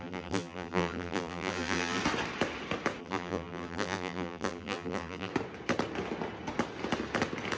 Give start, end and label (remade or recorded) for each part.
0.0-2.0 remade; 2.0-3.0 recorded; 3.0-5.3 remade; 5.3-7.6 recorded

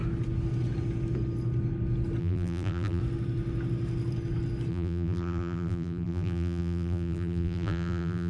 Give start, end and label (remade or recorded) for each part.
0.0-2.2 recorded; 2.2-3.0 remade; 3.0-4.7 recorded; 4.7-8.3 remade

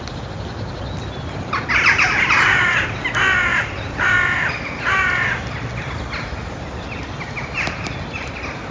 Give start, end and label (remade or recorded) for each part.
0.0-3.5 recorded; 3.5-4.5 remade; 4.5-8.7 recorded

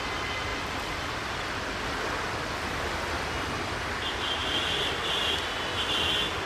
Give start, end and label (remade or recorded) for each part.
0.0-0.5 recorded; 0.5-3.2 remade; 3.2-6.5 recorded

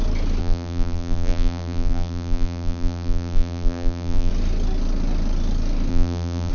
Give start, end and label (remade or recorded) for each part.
0.0-0.4 recorded; 0.4-4.3 remade; 4.3-5.9 recorded; 5.9-6.5 remade

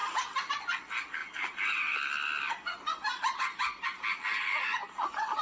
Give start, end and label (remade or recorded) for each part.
0.0-1.2 recorded; 1.2-2.5 remade; 2.5-5.4 recorded